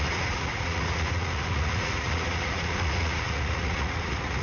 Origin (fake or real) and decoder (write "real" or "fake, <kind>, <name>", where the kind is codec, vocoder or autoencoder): fake, vocoder, Vocos